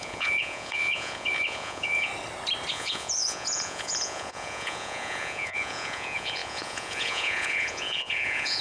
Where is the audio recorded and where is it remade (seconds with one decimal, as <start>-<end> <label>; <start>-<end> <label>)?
0.0-2.1 remade; 2.1-2.7 recorded; 2.7-8.6 remade